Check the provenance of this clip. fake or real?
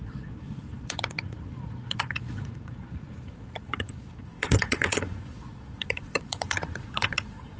fake